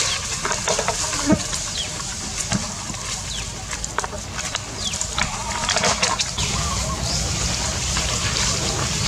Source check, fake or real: real